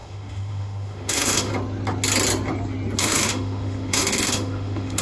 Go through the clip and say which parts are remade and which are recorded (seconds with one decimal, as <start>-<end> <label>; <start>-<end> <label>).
0.0-1.5 remade; 1.5-3.0 recorded; 3.0-5.0 remade